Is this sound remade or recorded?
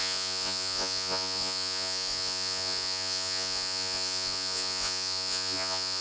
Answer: remade